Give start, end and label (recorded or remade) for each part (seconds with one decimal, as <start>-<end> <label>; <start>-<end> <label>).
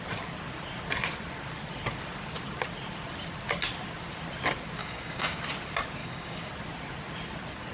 0.0-4.8 recorded; 4.8-5.4 remade; 5.4-6.0 recorded; 6.0-6.5 remade; 6.5-7.7 recorded